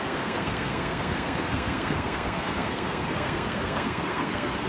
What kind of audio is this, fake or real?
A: fake